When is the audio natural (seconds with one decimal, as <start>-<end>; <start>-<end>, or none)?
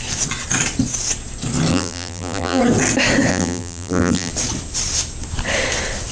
0.0-1.7; 2.6-3.3; 4.3-6.1